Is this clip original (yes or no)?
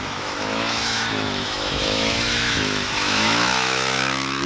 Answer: no